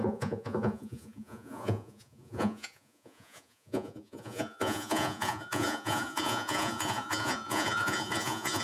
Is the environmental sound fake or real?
fake